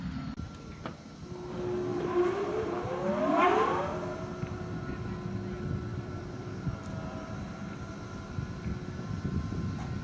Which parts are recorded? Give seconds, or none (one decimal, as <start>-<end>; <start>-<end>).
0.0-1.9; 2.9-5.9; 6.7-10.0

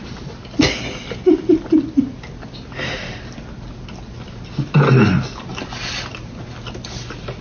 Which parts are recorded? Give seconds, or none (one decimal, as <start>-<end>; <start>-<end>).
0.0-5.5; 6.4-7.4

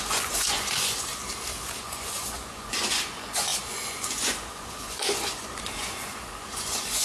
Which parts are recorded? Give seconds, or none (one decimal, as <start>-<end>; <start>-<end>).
1.1-1.8

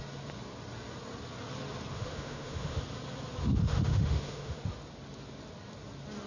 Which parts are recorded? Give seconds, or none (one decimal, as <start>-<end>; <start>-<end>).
0.0-1.9; 2.8-3.4; 4.6-6.3